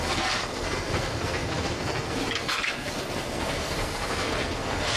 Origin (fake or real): fake